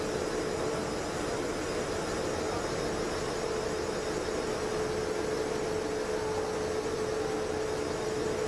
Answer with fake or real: real